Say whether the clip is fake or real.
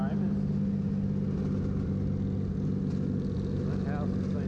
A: real